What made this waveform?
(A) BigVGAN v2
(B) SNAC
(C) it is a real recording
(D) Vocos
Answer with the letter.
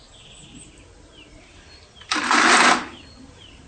C